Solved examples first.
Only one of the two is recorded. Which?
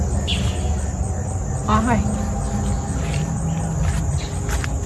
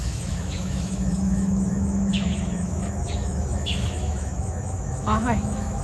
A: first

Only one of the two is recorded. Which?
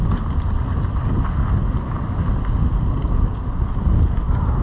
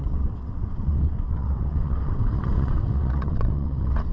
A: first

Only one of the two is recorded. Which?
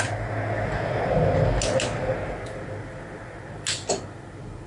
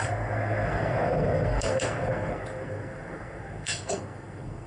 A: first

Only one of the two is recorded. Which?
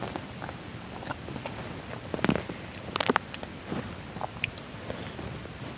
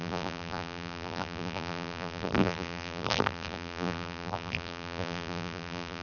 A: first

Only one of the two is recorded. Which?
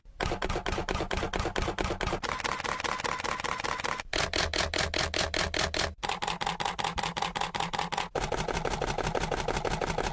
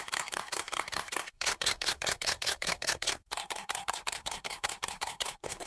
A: first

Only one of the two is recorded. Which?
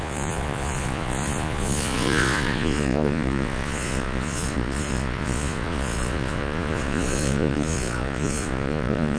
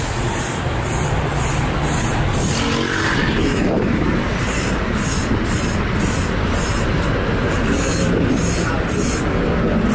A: second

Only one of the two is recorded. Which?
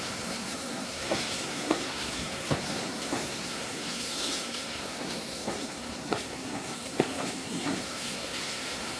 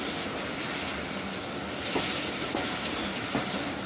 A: second